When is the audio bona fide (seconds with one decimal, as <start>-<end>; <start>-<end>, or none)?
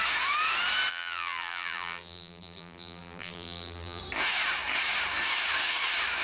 0.0-0.9; 4.0-6.2